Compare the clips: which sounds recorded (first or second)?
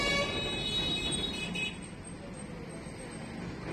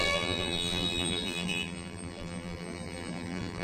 first